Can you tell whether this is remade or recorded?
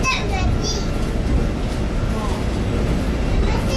recorded